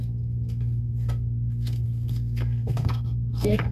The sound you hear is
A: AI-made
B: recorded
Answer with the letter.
A